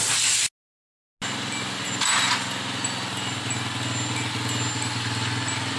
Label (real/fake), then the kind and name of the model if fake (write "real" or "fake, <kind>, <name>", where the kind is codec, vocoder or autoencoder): real